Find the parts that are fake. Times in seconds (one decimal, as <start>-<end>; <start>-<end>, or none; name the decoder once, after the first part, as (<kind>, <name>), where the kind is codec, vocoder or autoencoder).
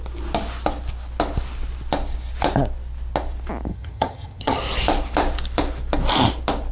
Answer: 3.7-4.6 (vocoder, HiFi-GAN)